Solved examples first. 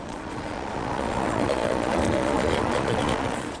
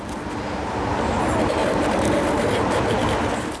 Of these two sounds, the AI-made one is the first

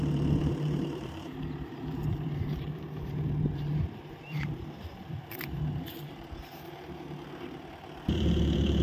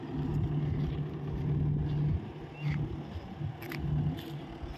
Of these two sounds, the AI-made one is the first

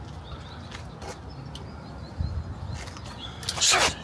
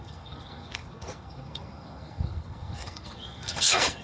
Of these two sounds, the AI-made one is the second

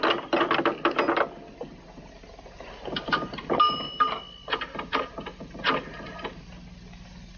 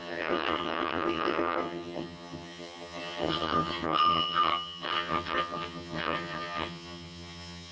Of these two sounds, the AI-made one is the second